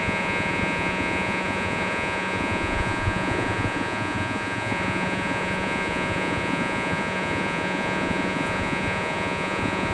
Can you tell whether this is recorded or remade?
remade